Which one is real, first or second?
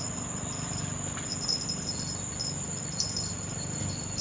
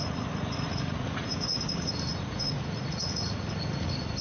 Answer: first